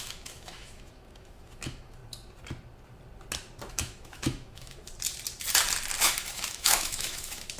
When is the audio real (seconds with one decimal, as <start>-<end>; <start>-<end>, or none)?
2.0-3.7; 4.9-6.0